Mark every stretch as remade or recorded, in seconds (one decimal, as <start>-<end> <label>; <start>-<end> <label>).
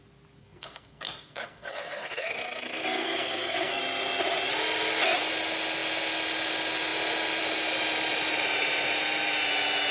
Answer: 0.0-0.4 recorded; 0.4-3.8 remade; 3.8-9.9 recorded